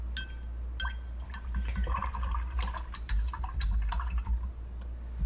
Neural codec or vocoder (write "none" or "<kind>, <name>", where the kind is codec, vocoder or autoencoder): none